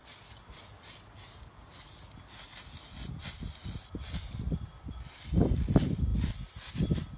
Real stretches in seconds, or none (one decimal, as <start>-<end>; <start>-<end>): 0.0-7.2